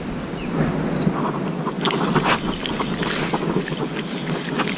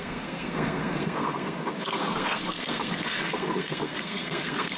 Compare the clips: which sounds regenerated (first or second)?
second